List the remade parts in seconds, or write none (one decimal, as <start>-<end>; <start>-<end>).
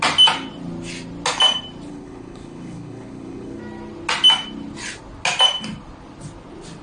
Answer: 1.9-3.6